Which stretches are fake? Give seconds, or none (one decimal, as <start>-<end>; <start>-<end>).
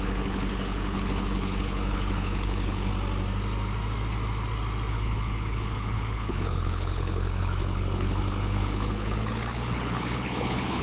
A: 0.0-2.9; 4.9-10.8